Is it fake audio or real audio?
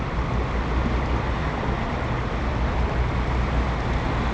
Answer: real